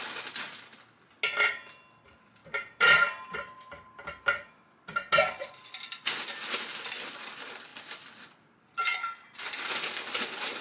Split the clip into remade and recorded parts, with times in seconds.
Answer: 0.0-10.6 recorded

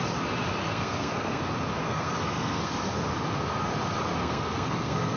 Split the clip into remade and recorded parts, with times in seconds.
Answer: 0.0-0.6 recorded; 0.6-1.4 remade; 1.4-1.8 recorded; 1.8-2.8 remade; 2.8-4.2 recorded; 4.2-5.2 remade

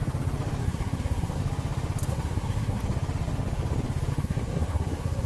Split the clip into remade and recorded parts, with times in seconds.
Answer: 0.0-0.6 recorded; 0.6-1.4 remade; 1.4-2.1 recorded; 2.1-2.8 remade; 2.8-4.1 recorded; 4.1-5.3 remade